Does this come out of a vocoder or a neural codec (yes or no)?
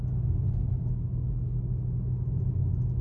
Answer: no